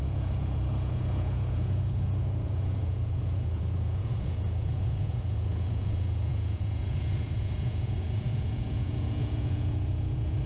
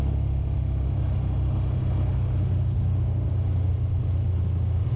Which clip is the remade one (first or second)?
first